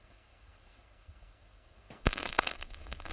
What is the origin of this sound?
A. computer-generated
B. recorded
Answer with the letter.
A